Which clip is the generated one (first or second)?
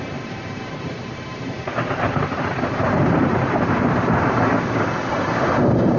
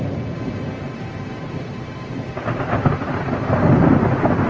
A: first